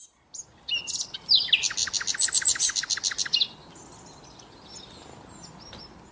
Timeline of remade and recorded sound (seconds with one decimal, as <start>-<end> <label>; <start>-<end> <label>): 0.0-6.1 recorded